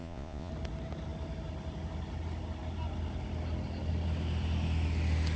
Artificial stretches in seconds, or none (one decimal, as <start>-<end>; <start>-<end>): 0.0-0.5